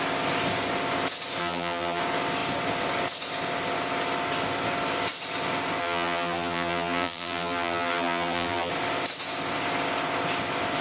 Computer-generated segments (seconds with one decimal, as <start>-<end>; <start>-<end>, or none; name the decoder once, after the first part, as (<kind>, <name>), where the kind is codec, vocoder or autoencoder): 1.4-2.0 (vocoder, BigVGAN v2); 5.8-8.7